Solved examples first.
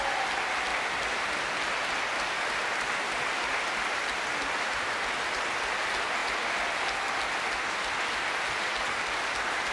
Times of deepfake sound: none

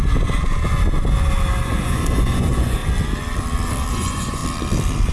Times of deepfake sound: 1.6-2.8; 3.9-4.4

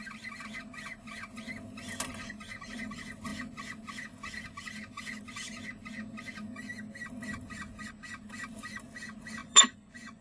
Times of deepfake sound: 9.4-10.2

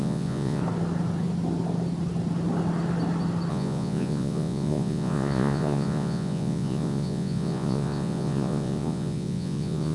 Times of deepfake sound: 0.0-0.6; 3.5-9.9

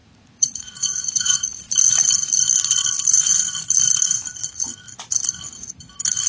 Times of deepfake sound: 0.0-1.7

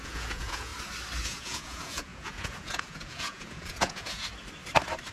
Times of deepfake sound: 0.0-0.7; 1.2-4.3

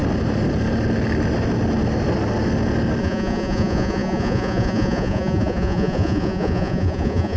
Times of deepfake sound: 3.0-7.4